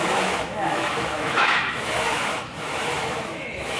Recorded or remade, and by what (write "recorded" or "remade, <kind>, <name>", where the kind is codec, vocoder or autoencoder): remade, autoencoder, DAC-VAE